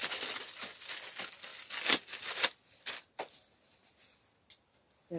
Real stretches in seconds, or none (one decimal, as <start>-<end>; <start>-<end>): 0.6-5.2